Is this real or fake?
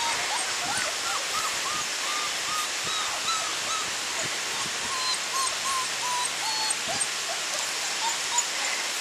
real